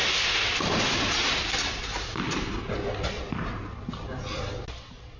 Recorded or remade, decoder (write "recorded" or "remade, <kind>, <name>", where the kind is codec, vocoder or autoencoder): recorded